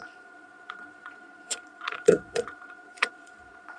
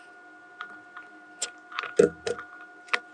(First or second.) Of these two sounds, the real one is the second